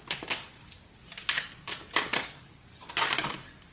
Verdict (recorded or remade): recorded